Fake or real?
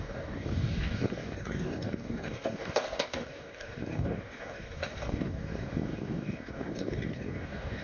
fake